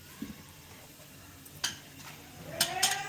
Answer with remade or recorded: recorded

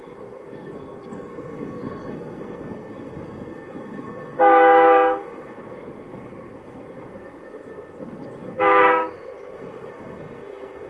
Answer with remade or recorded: remade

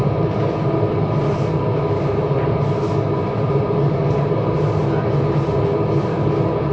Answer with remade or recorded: recorded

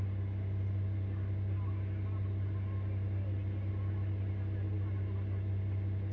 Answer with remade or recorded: recorded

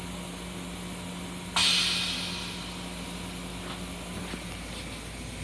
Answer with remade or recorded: recorded